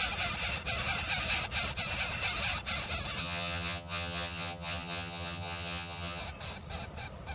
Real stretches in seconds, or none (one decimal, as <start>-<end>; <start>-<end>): 0.0-3.2; 6.2-7.3